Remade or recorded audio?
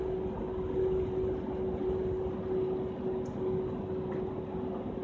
recorded